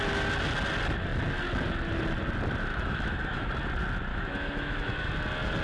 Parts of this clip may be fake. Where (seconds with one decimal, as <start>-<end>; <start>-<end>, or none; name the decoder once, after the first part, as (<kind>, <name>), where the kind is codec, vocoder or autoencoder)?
2.7-3.5 (autoencoder, DAC-VAE); 4.1-5.1